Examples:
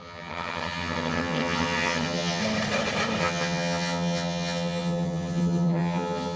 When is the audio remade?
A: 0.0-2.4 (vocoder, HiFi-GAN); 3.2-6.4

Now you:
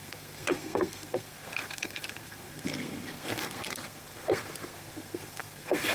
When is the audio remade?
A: 0.0-5.9 (codec, SNAC)

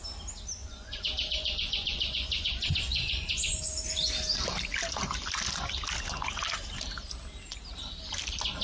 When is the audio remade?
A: 0.6-3.6 (vocoder, Vocos)

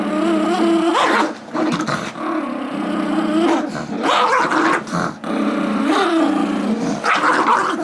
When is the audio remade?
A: none

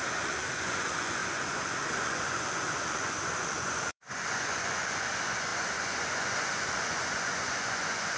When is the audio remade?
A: 0.0-8.2 (vocoder, Vocos)